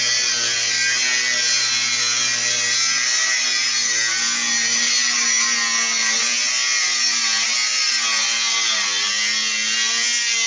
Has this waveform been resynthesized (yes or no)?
no